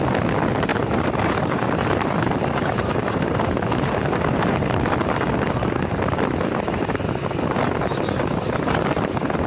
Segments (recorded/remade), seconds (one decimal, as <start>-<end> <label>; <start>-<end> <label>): 0.0-0.7 recorded; 0.7-4.9 remade; 4.9-9.5 recorded